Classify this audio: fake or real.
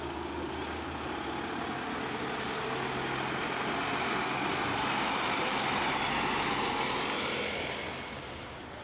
real